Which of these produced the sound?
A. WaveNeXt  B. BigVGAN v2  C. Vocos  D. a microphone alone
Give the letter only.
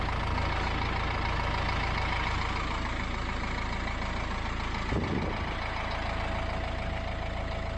D